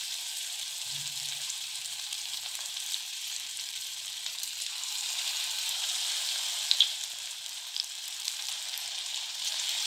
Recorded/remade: remade